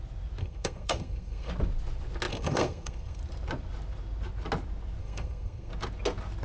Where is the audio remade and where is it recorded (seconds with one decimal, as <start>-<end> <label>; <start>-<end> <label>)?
0.0-0.4 recorded; 0.4-1.5 remade; 1.5-2.3 recorded; 2.3-3.2 remade; 3.2-5.0 recorded; 5.0-5.7 remade; 5.7-6.4 recorded